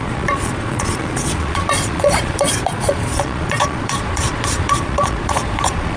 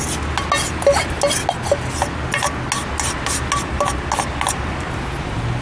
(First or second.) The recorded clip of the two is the second